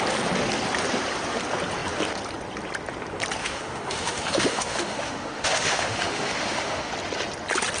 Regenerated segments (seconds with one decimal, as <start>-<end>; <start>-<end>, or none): 3.4-6.9